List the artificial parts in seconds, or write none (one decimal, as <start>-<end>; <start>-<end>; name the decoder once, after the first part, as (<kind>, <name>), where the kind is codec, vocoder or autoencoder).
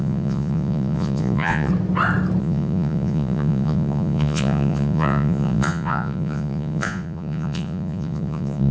0.0-1.7 (vocoder, Vocos); 2.4-8.7